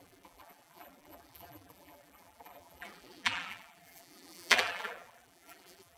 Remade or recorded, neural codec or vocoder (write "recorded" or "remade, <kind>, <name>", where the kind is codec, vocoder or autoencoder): remade, vocoder, BigVGAN v2